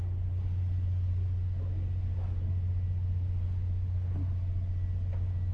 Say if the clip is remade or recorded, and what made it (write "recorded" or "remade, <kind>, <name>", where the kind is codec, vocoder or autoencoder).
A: recorded